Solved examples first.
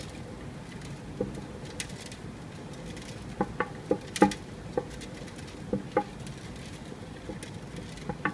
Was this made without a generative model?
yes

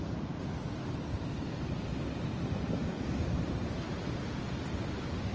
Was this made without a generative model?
yes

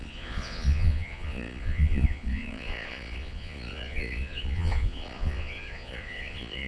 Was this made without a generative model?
no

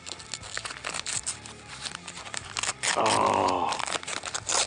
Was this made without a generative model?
yes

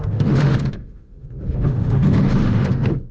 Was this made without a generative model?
no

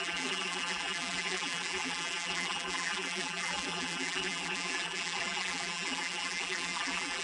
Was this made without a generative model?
no